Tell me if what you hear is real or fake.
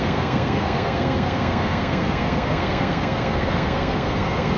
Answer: fake